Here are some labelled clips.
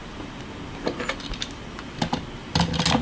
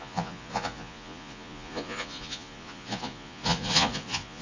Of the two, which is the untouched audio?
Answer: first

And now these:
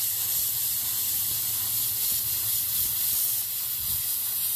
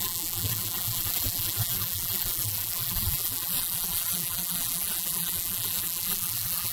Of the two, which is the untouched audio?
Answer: first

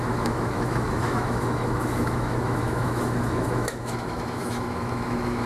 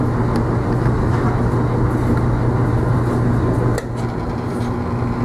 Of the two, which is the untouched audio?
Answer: second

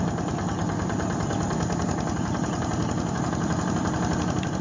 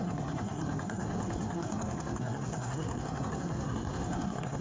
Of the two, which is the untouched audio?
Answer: first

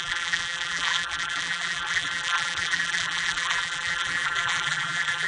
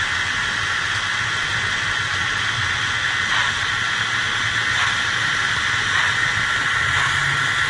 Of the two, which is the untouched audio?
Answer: second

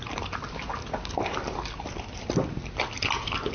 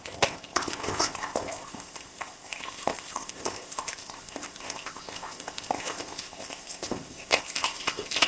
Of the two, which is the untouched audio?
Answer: first